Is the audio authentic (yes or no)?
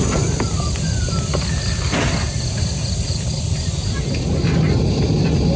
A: yes